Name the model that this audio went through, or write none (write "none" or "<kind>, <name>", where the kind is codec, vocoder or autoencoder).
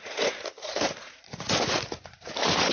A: vocoder, Vocos